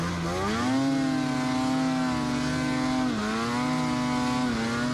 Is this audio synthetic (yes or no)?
no